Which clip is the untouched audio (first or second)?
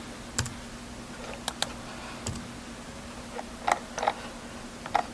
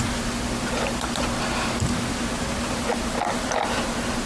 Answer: first